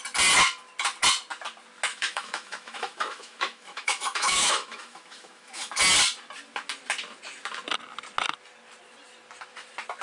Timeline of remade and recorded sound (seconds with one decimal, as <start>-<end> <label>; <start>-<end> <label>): 0.0-1.9 recorded; 1.9-5.8 remade; 5.8-10.0 recorded